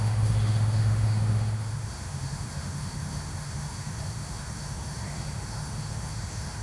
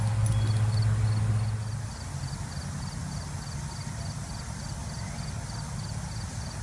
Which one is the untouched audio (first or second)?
second